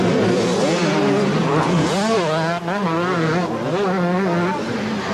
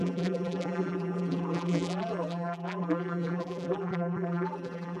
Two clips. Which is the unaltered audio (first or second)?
first